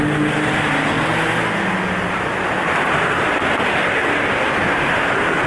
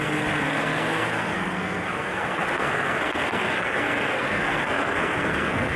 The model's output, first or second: second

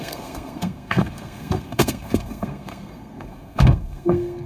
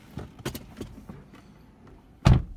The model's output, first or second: first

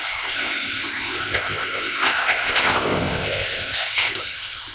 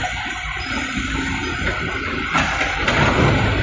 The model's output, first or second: first